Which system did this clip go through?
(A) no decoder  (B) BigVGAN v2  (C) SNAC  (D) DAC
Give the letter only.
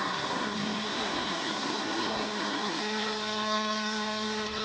C